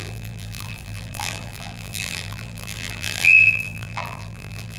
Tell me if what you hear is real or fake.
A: fake